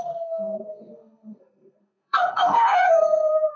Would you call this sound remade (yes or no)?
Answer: yes